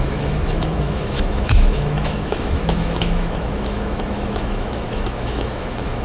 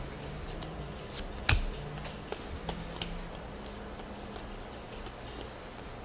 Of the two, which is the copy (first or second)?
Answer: first